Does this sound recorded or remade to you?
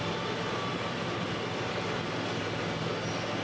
recorded